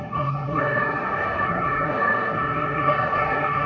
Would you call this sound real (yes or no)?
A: no